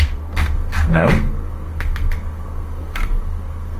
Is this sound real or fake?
fake